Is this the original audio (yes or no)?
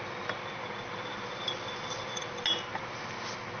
yes